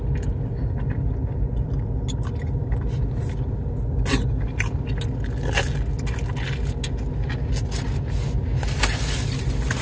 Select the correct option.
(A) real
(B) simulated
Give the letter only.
A